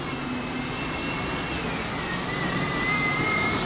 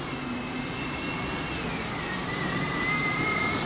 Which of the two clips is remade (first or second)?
second